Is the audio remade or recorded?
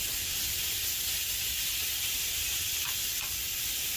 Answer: recorded